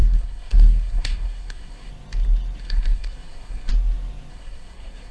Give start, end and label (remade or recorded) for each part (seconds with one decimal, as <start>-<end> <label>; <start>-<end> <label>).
0.0-1.9 remade; 1.9-2.6 recorded; 2.6-3.7 remade; 3.7-4.3 recorded; 4.3-5.1 remade